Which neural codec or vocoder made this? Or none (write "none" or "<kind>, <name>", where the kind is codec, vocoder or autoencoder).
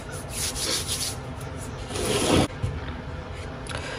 none